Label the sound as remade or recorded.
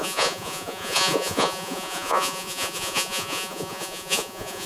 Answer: remade